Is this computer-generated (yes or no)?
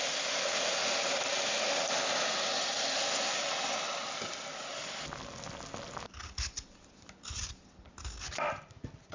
no